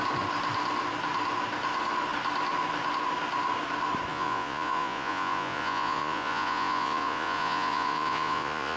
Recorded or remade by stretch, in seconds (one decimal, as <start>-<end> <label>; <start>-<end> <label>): 0.0-4.1 recorded; 4.1-8.8 remade